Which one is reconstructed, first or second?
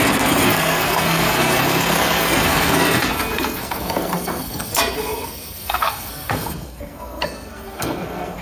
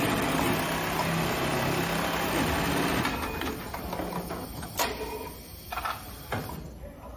first